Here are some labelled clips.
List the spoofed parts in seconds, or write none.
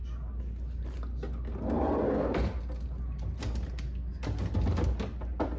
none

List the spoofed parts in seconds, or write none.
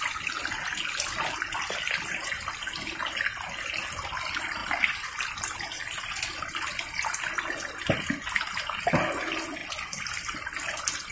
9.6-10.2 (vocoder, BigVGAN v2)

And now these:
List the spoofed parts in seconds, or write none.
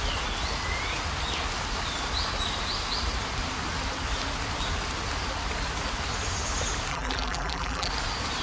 6.9-7.9 (vocoder, BigVGAN v2)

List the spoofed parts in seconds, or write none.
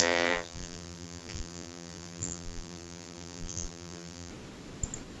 0.0-4.3 (vocoder, BigVGAN v2)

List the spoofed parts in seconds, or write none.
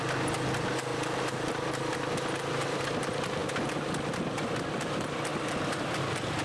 0.9-3.0 (vocoder, BigVGAN v2); 3.4-4.2; 5.3-6.0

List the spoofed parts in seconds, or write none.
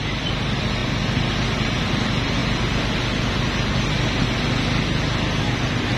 0.0-0.8 (vocoder, BigVGAN v2); 1.8-2.4; 5.4-6.0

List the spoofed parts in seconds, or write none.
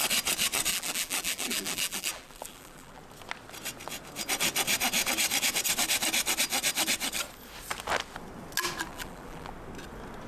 0.7-3.0 (vocoder, BigVGAN v2); 8.9-9.5